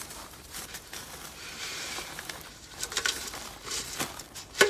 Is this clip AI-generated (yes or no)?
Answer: yes